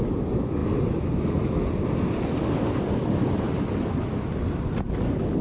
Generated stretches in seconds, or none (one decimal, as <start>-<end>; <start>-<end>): none